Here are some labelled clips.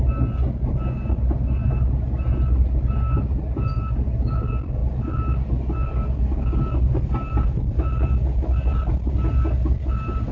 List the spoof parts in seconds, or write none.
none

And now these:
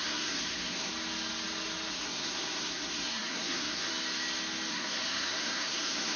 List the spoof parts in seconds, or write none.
0.0-0.9 (codec, SNAC); 1.9-3.9; 4.7-6.2

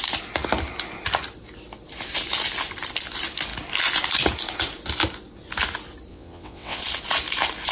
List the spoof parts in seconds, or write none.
6.1-6.8 (vocoder, WaveNeXt)

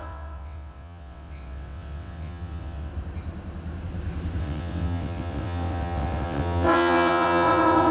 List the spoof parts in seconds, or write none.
0.0-2.9 (vocoder, WaveNeXt); 4.4-7.9

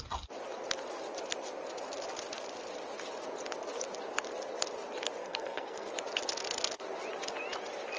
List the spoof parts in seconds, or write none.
5.2-5.9 (codec, SNAC)